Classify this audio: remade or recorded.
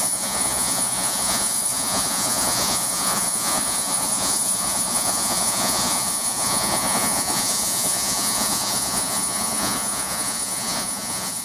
remade